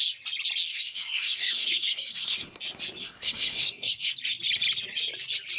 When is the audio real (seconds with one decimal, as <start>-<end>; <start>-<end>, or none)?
0.0-0.7; 2.6-3.0; 4.1-5.6